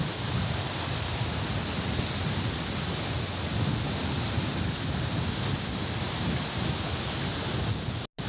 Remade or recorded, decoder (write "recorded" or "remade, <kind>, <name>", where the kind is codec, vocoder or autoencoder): recorded